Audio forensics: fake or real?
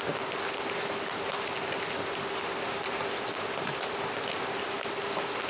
real